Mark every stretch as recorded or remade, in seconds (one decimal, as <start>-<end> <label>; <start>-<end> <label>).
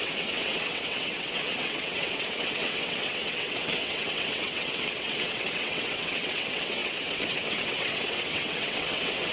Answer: 0.0-9.3 remade